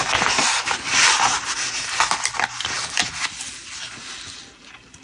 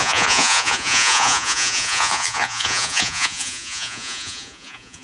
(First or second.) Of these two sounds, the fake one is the second